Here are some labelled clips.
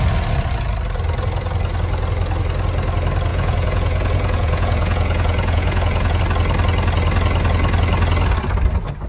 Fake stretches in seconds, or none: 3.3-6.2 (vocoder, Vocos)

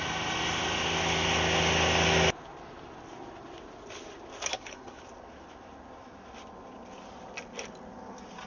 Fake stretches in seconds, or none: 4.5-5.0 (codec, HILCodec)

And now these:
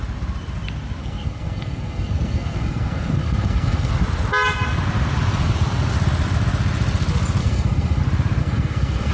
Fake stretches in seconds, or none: 1.0-3.9 (codec, SNAC); 7.4-8.0; 8.4-9.1

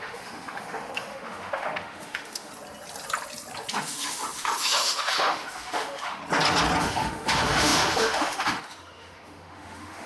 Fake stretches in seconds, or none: 0.0-2.5 (autoencoder, DAC-VAE); 3.7-6.2; 6.8-10.1